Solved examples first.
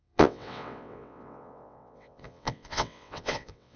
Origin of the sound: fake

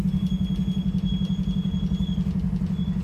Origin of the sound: real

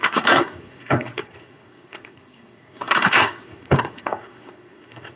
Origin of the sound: fake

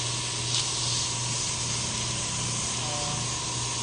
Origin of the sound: real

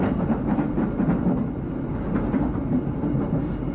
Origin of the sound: fake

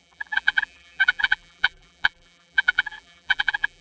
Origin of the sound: fake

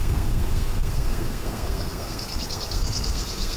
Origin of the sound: fake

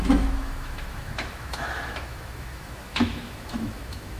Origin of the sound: fake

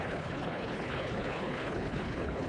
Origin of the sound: fake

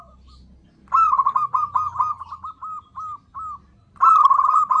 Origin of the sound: real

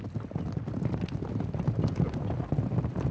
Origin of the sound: real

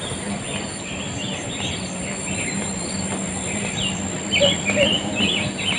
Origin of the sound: real